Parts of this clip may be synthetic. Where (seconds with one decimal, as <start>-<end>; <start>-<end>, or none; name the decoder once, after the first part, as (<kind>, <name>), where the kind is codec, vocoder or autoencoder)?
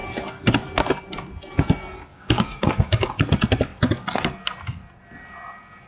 2.1-3.2 (codec, DAC)